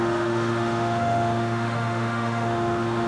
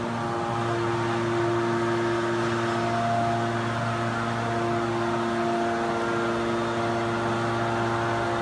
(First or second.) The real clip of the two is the second